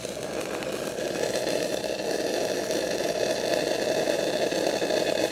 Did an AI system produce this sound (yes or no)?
no